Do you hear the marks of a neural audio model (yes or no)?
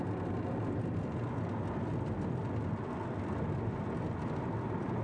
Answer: no